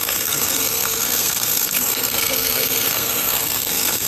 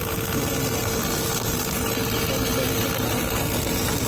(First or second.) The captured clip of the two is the second